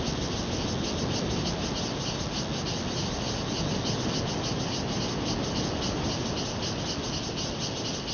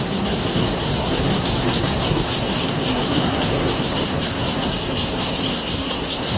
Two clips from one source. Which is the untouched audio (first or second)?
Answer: first